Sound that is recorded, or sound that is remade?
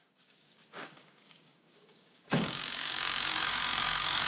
remade